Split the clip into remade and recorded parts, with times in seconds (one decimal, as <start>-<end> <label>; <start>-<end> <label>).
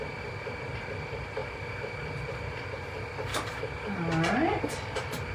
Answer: 0.0-5.3 recorded